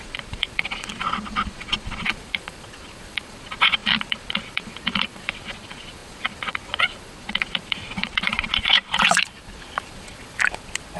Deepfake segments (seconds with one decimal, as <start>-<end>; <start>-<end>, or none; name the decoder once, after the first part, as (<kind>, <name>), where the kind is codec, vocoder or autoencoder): 0.0-11.0 (vocoder, Vocos)